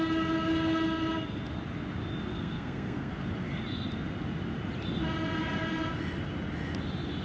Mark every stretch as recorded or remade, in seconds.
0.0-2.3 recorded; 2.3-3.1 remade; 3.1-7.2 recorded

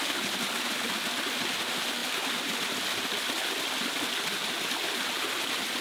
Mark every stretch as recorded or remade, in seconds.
0.0-5.8 recorded